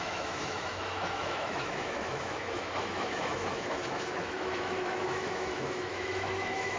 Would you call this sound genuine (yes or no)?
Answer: no